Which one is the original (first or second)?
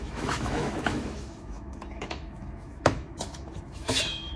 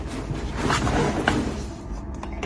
second